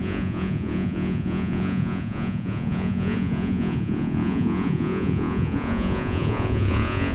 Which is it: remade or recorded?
remade